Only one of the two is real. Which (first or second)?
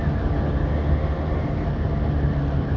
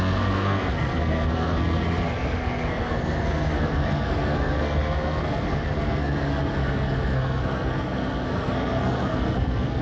first